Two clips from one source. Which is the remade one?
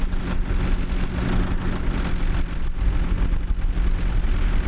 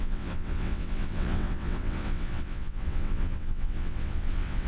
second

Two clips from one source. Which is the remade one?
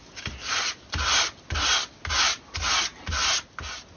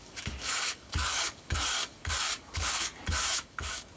second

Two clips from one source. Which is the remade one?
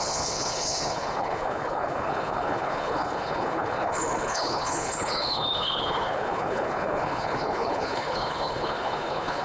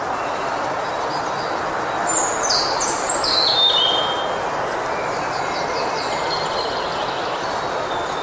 first